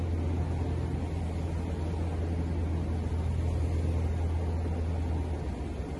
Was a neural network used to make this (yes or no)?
no